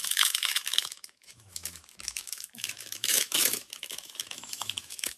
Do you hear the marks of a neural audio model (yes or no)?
yes